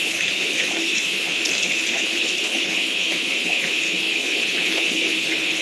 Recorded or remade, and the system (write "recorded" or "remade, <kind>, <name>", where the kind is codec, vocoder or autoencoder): remade, codec, HILCodec